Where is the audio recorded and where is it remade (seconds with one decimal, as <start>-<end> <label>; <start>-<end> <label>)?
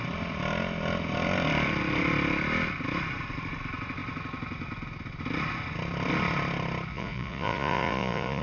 0.0-6.9 recorded; 6.9-8.4 remade